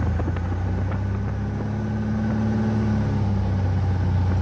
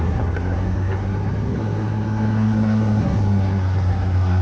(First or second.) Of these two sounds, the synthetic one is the second